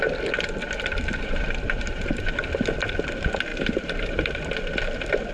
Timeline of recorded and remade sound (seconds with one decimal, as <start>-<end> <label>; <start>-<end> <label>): 0.0-0.6 recorded; 0.6-2.3 remade; 2.3-3.5 recorded; 3.5-4.6 remade; 4.6-5.3 recorded